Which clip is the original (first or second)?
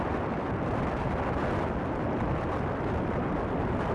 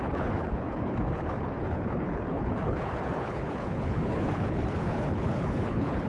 first